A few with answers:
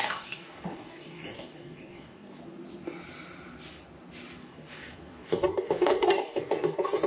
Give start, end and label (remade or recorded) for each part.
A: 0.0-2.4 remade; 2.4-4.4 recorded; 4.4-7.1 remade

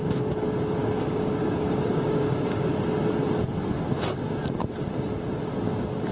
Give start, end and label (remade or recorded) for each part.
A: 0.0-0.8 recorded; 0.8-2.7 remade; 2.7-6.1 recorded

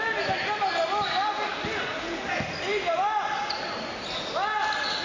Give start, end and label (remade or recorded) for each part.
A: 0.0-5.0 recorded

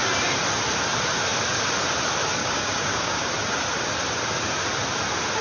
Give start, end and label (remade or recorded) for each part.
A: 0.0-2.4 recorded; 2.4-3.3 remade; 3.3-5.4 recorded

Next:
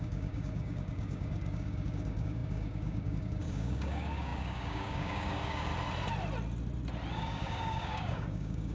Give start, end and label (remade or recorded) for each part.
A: 0.0-5.7 remade; 5.7-7.1 recorded; 7.1-8.7 remade